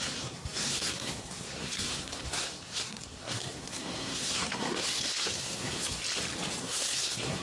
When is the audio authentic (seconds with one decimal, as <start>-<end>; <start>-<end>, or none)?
6.0-6.6